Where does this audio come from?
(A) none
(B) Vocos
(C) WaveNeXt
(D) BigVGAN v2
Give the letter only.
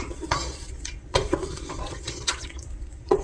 B